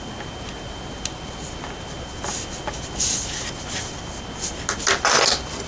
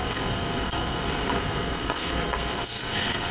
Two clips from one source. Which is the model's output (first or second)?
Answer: second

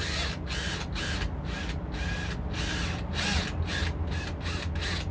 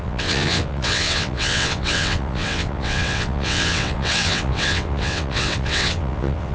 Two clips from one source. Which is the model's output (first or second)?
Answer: second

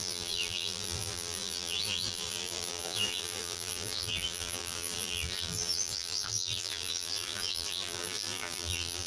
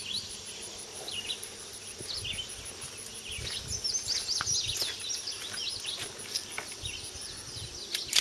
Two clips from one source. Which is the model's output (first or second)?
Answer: first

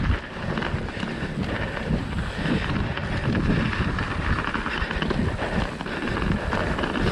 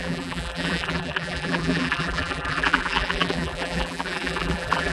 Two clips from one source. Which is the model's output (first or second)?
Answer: second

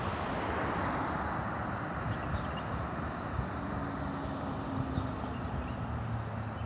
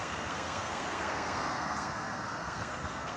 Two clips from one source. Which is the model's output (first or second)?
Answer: second